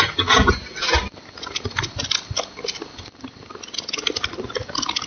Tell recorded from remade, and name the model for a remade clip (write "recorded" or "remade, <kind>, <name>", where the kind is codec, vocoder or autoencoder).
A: recorded